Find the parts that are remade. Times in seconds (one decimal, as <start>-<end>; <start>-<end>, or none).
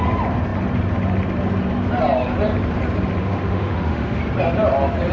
3.2-4.2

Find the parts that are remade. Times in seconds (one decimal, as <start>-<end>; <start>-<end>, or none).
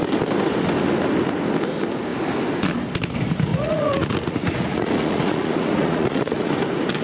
3.5-6.5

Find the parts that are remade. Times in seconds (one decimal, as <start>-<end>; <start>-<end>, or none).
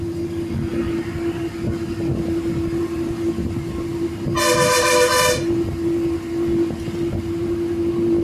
none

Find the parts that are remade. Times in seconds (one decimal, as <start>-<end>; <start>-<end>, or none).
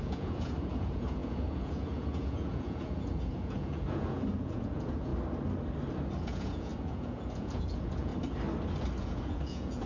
0.0-5.1; 6.2-8.1; 9.0-9.9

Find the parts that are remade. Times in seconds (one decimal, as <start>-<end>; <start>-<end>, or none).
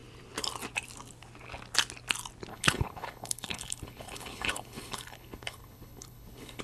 2.5-6.6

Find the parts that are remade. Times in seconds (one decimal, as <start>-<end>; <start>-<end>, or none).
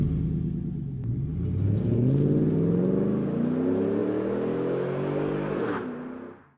none